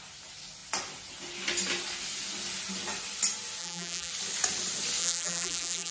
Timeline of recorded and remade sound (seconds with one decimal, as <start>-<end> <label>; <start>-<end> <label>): 0.0-3.6 recorded; 3.6-4.1 remade; 4.1-5.0 recorded; 5.0-5.9 remade